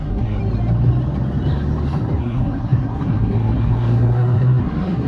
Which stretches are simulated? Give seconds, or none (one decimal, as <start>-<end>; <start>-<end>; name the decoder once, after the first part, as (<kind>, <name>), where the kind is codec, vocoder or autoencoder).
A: 0.0-0.4 (codec, SNAC); 2.2-5.1